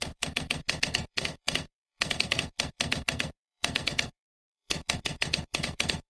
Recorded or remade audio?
remade